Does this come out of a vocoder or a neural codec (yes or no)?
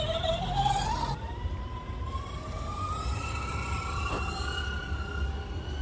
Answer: no